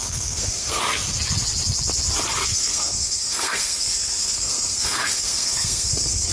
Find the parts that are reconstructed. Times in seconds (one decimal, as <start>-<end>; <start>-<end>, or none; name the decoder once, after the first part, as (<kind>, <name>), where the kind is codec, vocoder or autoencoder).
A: 0.0-0.8 (codec, SNAC); 2.4-6.3